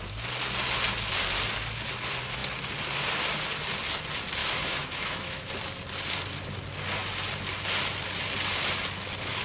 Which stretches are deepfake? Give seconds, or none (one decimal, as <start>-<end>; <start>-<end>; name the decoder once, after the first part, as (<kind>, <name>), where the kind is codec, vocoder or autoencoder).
4.4-5.5 (autoencoder, DAC-VAE)